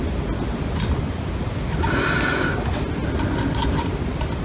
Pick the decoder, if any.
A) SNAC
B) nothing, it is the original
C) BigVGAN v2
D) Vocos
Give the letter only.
B